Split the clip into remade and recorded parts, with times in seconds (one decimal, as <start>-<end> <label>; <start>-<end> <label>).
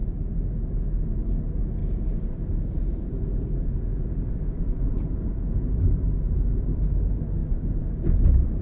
0.0-0.7 remade; 0.7-1.8 recorded; 1.8-5.8 remade; 5.8-8.6 recorded